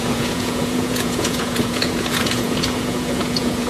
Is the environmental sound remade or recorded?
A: remade